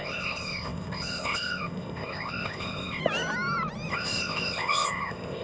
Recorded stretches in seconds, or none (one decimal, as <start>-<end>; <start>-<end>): 3.0-3.9